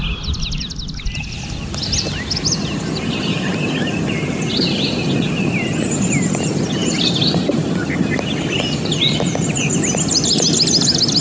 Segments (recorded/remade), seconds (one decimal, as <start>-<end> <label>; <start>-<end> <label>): 0.0-11.2 recorded